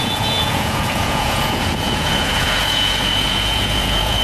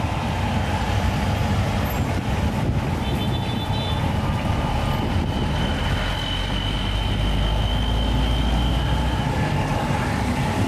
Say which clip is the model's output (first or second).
first